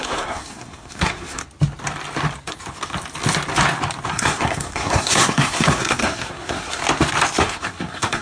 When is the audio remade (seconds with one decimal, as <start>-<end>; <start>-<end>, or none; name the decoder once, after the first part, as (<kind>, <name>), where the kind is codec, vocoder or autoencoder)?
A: 0.0-1.4 (codec, SNAC); 4.1-6.8; 7.4-8.2